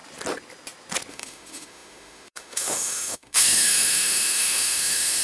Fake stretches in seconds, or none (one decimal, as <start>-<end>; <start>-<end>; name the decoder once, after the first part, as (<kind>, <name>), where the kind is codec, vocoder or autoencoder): 1.1-5.2 (autoencoder, DAC-VAE)